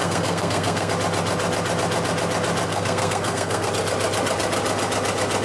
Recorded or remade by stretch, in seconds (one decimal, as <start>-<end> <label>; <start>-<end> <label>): 0.0-0.9 remade; 0.9-2.7 recorded; 2.7-3.7 remade; 3.7-5.4 recorded